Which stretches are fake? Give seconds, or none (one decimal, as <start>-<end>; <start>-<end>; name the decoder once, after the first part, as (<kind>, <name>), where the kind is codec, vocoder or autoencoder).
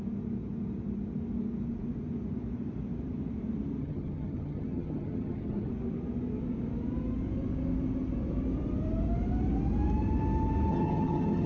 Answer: 3.8-5.7 (vocoder, HiFi-GAN); 10.7-11.5